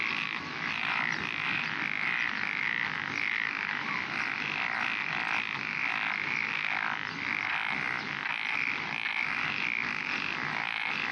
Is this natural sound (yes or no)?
yes